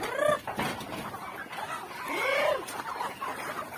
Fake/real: real